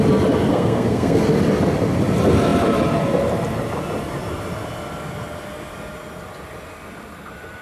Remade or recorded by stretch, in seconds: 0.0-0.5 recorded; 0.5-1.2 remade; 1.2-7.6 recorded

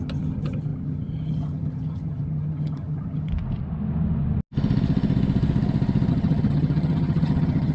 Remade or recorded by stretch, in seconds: 0.0-3.3 remade; 3.3-6.1 recorded; 6.1-7.7 remade